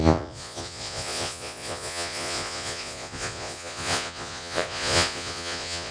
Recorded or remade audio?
remade